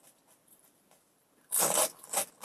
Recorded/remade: recorded